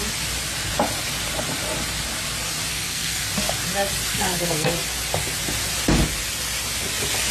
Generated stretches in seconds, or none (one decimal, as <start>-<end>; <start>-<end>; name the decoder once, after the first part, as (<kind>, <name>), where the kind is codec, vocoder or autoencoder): 2.7-3.2 (codec, SNAC); 4.1-4.7